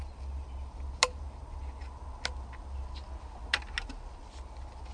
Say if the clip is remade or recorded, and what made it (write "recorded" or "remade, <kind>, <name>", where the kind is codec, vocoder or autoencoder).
recorded